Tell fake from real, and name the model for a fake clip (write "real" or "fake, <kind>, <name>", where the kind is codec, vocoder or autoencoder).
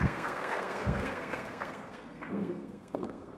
fake, codec, SNAC